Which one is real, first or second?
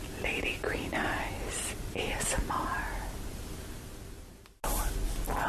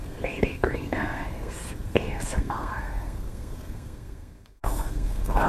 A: first